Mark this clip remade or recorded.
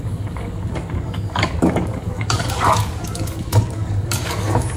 remade